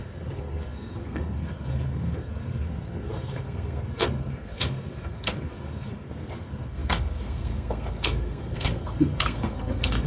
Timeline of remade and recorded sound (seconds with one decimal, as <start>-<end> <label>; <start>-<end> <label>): 0.0-10.1 remade